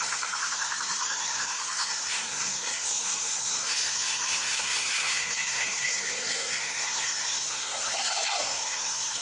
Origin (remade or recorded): remade